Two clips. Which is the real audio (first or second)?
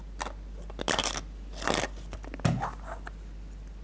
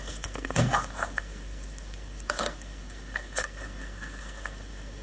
first